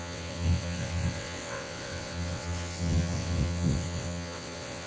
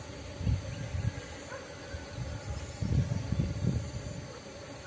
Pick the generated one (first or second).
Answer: first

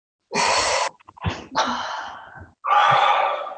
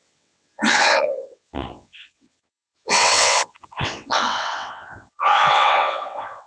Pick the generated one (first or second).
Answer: second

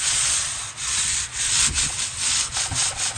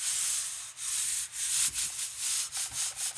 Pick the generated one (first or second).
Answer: first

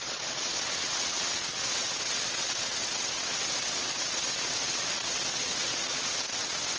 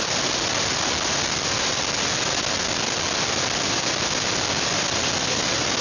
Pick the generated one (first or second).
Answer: first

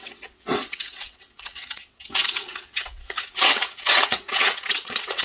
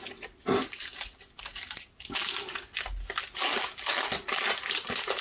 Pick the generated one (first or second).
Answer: first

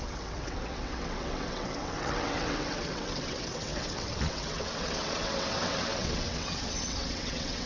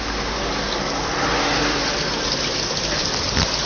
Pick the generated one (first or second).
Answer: first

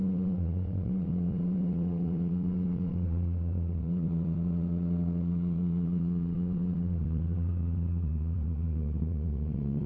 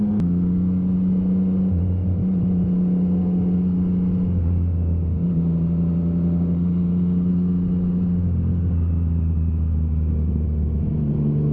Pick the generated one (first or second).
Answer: first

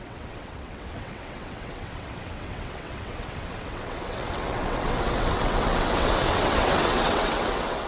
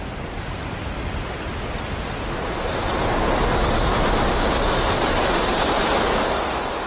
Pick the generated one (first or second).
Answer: first